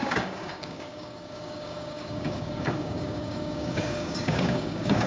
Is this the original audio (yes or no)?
no